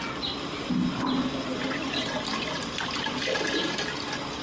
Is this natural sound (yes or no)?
yes